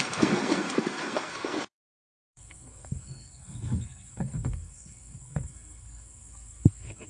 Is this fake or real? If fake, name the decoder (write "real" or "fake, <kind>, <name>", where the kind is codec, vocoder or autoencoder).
fake, codec, SNAC